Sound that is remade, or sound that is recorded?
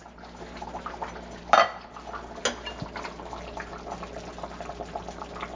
recorded